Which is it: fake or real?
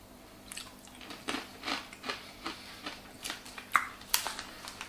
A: real